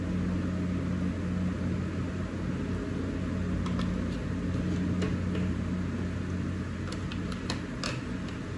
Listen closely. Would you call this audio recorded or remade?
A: recorded